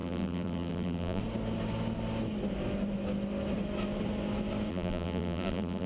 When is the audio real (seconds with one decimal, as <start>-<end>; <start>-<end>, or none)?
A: 1.2-4.7